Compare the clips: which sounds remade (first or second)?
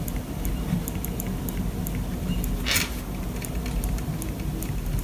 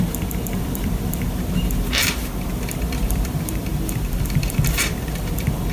second